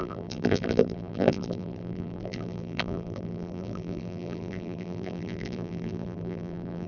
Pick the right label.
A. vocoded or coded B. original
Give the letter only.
A